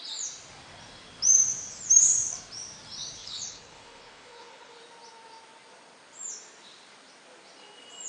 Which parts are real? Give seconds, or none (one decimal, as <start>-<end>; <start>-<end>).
0.0-3.2; 4.8-8.1